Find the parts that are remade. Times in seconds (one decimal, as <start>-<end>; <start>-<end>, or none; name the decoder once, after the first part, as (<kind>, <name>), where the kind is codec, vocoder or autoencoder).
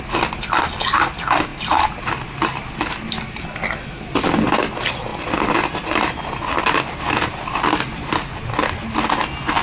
none